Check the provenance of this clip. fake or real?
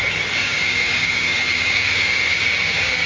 fake